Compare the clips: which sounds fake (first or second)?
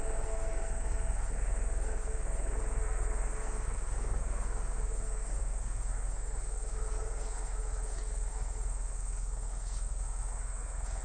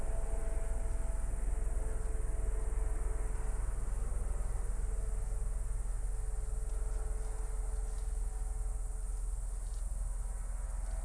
first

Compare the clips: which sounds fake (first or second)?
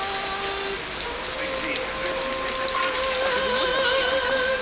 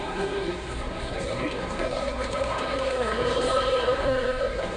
second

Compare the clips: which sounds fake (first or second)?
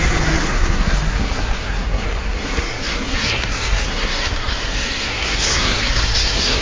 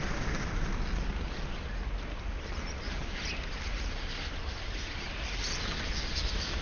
first